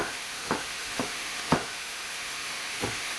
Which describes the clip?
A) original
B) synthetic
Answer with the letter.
B